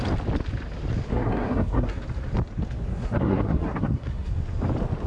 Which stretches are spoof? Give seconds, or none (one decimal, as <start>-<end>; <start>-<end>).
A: 1.1-2.0; 2.9-4.3